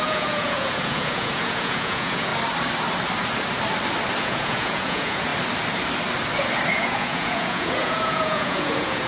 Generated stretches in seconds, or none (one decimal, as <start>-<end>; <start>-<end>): 0.0-2.3; 4.2-5.3; 6.7-9.1